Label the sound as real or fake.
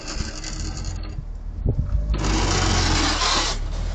real